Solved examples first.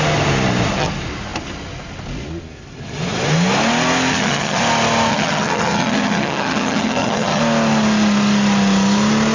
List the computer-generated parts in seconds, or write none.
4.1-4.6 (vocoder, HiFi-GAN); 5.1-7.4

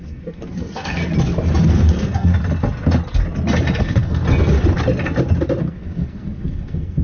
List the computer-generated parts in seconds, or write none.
0.0-1.0 (codec, SNAC); 1.7-2.3; 3.8-4.2; 5.6-7.0